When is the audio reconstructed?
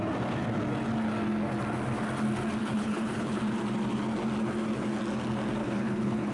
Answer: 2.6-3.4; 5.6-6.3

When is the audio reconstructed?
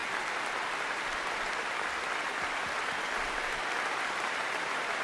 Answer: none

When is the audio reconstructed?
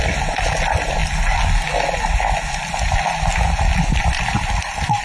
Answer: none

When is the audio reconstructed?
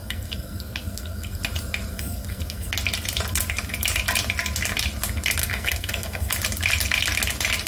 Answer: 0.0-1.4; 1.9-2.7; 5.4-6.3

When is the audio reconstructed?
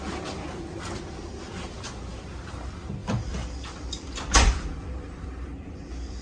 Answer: 3.0-5.8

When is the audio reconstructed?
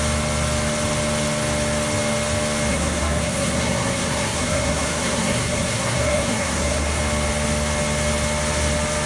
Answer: 2.7-7.0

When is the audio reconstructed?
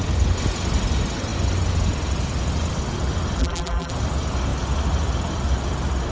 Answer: 3.4-3.9